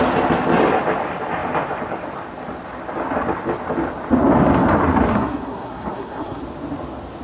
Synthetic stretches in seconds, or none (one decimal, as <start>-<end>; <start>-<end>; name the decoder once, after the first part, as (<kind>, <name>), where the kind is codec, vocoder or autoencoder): 5.1-6.4 (codec, SNAC)

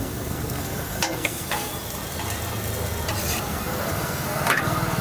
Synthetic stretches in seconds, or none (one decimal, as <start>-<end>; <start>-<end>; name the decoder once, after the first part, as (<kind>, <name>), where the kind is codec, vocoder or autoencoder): 0.0-1.7 (codec, SNAC); 3.4-5.0

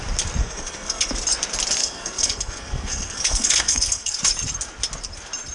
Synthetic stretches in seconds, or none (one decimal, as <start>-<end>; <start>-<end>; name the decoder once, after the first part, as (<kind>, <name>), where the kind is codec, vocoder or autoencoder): 0.4-1.1 (codec, SNAC); 1.8-4.2

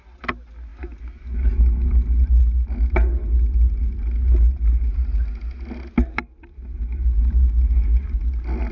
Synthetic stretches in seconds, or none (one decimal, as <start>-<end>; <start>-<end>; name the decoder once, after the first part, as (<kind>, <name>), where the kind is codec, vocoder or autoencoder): none

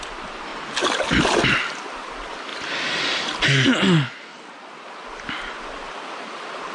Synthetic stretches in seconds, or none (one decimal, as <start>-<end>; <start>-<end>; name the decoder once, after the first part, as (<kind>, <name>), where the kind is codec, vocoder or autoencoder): none

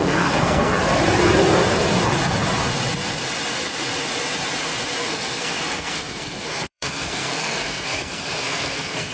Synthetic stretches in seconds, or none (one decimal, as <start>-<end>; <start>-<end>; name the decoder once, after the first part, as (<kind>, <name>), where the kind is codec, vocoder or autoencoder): 0.0-0.7 (codec, SNAC); 5.0-9.1

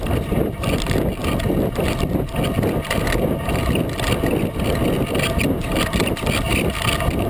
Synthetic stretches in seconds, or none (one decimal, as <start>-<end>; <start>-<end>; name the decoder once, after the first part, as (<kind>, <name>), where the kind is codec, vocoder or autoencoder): none